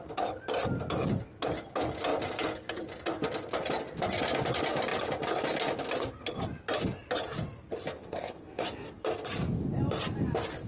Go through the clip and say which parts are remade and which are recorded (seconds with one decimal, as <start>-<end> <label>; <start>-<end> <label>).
0.0-8.1 recorded; 8.1-8.6 remade; 8.6-10.7 recorded